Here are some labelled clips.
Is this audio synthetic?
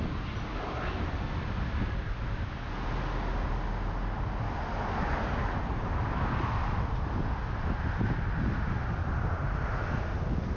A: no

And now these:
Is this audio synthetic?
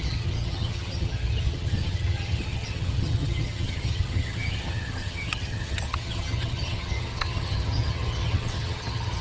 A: yes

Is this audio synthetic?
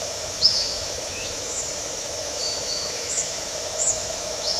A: yes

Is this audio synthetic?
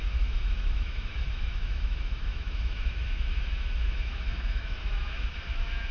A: yes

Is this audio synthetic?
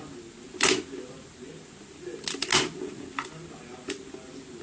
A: no